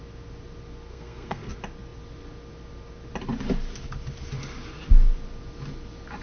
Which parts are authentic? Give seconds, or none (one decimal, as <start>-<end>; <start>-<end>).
0.0-0.9; 1.5-6.2